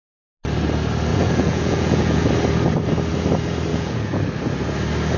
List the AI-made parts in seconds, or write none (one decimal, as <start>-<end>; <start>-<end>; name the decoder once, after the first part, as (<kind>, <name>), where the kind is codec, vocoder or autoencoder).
1.1-2.3 (vocoder, Vocos); 3.7-4.2